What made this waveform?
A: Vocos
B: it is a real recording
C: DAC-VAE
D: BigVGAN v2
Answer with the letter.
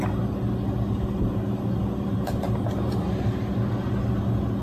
B